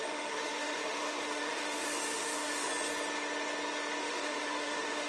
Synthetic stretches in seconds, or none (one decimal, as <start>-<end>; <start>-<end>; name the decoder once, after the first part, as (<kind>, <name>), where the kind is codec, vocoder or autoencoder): 0.0-2.7 (autoencoder, DAC-VAE); 4.0-5.1